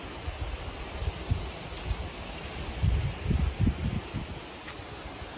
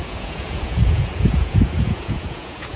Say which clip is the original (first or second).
first